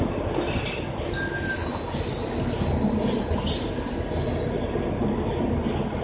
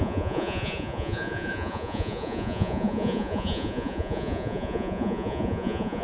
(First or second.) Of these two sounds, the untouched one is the first